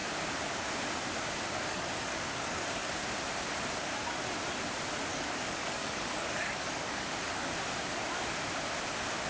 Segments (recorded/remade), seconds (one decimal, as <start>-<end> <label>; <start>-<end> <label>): 0.0-1.7 recorded; 1.7-2.9 remade; 2.9-5.1 recorded; 5.1-7.5 remade; 7.5-9.3 recorded